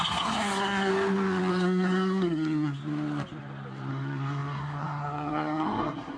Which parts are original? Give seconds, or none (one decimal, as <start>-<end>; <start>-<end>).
0.9-1.5; 2.8-3.9